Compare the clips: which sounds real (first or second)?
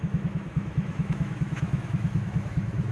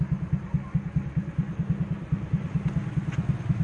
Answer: second